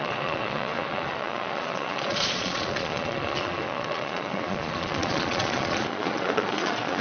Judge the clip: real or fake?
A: fake